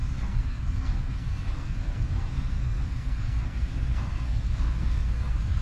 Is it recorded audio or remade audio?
remade